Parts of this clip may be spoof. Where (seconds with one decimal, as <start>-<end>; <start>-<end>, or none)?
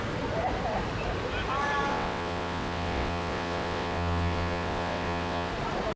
1.9-5.5